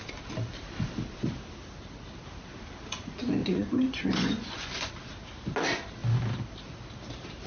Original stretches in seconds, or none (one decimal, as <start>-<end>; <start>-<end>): 0.0-3.4; 4.9-7.5